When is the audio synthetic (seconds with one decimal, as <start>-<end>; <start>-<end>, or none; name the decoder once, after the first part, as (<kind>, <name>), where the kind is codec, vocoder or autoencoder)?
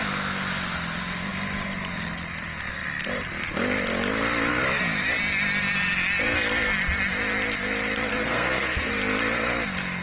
8.1-8.9 (codec, SNAC)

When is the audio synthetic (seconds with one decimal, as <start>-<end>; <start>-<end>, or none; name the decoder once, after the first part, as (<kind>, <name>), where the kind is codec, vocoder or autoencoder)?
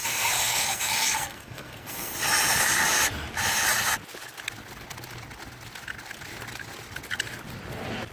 0.0-2.1 (codec, SNAC)